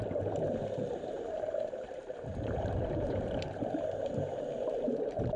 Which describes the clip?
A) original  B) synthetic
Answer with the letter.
B